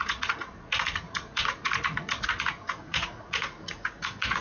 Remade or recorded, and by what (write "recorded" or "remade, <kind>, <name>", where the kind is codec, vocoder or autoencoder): remade, vocoder, Vocos